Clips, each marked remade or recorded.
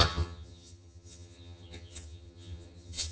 remade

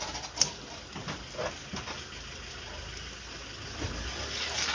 recorded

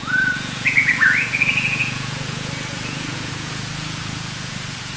remade